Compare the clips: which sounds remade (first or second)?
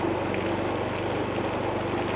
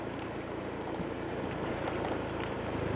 second